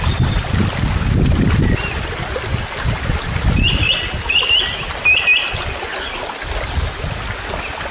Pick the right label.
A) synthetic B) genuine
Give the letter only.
B